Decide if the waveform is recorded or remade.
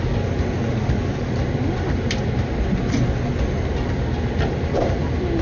recorded